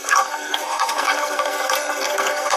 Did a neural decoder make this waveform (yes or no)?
yes